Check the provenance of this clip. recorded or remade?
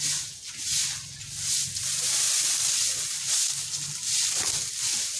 recorded